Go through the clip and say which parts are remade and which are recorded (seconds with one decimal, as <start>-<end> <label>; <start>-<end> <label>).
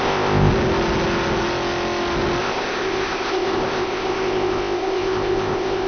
0.0-0.5 remade; 0.5-2.4 recorded; 2.4-5.9 remade